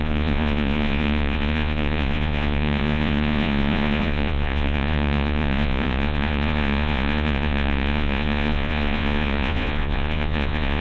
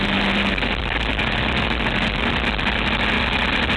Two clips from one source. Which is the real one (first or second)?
second